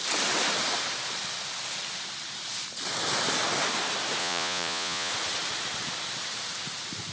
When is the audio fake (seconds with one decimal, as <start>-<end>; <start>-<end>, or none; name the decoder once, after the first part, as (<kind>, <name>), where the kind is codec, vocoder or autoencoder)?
4.2-5.1 (vocoder, Vocos)